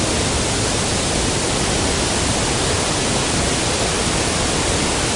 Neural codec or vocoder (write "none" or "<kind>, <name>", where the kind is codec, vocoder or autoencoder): none